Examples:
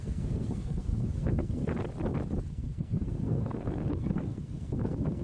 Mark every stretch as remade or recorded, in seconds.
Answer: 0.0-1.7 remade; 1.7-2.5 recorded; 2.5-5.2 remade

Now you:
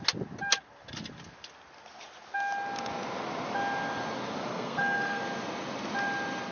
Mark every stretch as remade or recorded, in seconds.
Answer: 0.0-4.5 recorded; 4.5-5.2 remade; 5.2-6.5 recorded

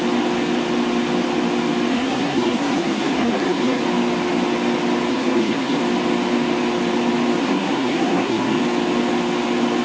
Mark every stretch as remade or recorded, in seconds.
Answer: 0.0-1.9 recorded; 1.9-3.8 remade; 3.8-5.1 recorded; 5.1-5.8 remade; 5.8-7.4 recorded; 7.4-8.6 remade; 8.6-9.8 recorded

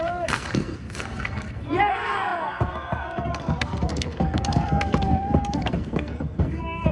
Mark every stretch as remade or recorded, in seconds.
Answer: 0.0-6.9 remade